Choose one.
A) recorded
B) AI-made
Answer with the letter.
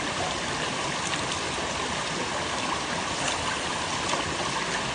A